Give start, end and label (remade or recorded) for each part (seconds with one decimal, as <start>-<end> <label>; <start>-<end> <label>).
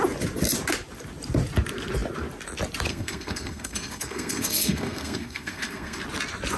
0.0-2.9 recorded; 2.9-6.0 remade; 6.0-6.6 recorded